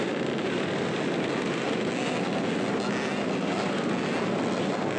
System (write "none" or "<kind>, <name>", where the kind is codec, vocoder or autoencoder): none